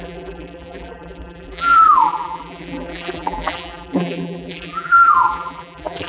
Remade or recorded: remade